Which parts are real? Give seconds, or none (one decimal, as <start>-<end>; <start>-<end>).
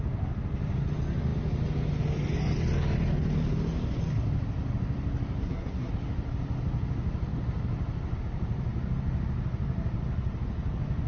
0.0-5.4; 5.9-11.1